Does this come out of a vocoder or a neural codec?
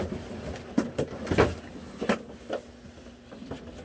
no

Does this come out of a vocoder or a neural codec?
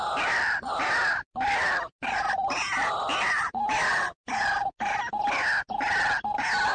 no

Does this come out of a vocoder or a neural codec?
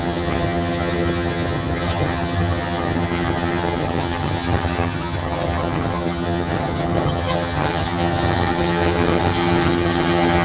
yes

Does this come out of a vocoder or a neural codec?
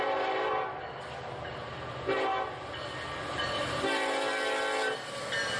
no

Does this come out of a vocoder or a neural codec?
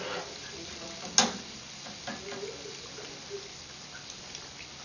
no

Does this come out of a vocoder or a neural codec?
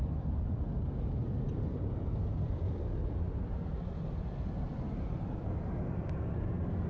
no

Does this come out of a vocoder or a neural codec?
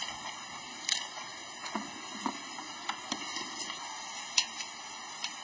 no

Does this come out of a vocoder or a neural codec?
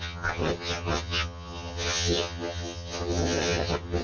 yes